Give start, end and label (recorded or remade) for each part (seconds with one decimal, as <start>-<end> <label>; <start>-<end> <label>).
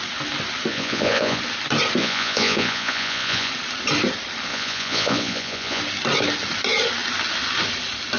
0.0-0.7 recorded; 0.7-1.4 remade; 1.4-2.0 recorded; 2.0-3.5 remade; 3.5-4.5 recorded; 4.5-5.8 remade; 5.8-8.2 recorded